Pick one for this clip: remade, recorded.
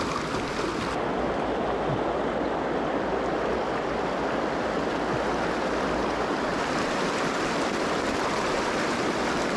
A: recorded